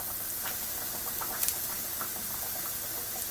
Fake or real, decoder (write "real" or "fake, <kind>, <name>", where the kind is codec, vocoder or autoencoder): real